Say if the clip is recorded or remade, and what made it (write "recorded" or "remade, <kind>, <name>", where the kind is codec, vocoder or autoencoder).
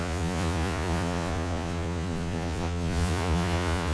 remade, vocoder, Vocos